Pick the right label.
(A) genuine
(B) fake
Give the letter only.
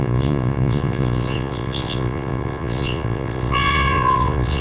B